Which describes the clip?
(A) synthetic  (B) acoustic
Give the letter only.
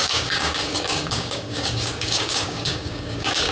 A